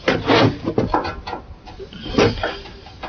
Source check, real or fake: real